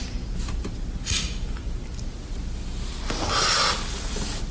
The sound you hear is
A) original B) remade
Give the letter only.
A